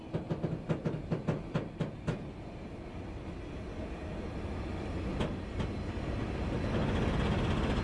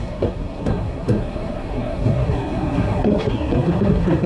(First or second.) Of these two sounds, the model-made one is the second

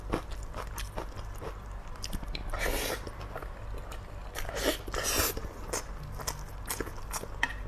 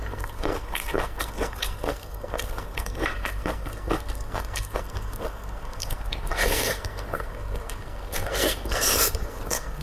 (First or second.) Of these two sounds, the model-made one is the second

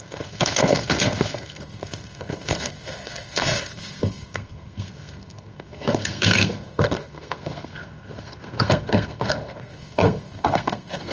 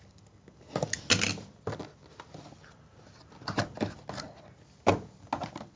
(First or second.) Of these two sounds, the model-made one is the first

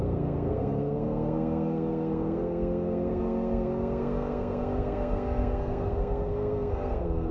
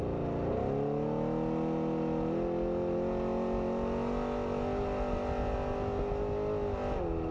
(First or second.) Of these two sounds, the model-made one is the first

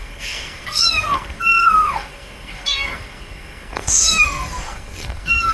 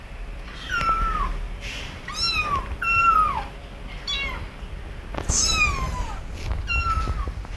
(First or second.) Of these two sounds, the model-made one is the first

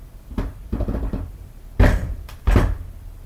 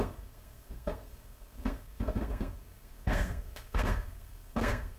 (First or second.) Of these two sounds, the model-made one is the second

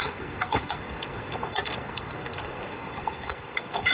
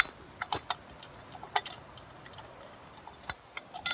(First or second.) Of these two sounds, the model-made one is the first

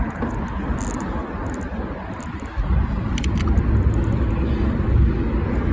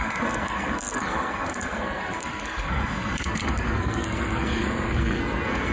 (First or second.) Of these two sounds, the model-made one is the second